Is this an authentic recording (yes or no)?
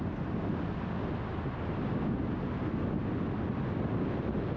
yes